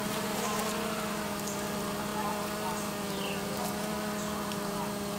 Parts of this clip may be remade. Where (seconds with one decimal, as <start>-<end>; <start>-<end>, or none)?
none